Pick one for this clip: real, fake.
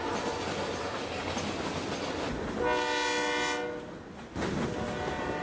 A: real